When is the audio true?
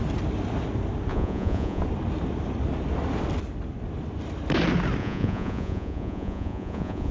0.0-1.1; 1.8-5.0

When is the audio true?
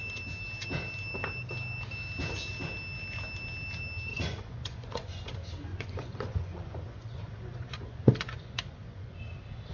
0.0-4.1; 5.3-5.7; 9.2-9.7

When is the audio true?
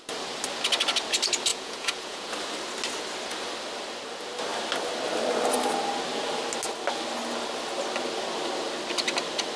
0.0-1.5; 2.3-9.6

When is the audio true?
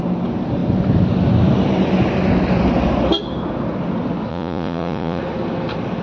0.0-4.3; 5.2-6.0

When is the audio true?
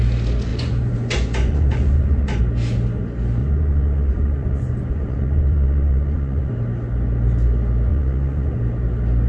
0.0-0.5; 2.4-3.4; 6.5-7.9; 8.6-9.3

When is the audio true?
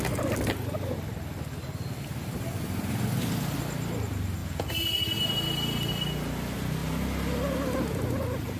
0.0-4.4; 5.0-8.6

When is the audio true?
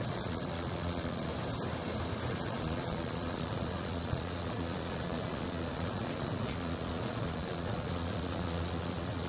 1.3-2.3